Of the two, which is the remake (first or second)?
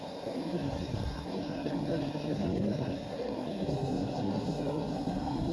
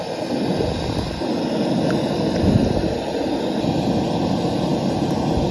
first